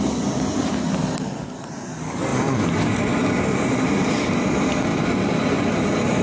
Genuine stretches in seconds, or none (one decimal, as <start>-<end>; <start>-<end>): 0.0-2.3; 3.0-4.9; 5.5-6.2